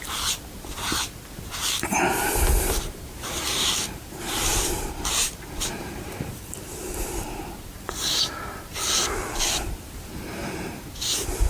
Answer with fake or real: fake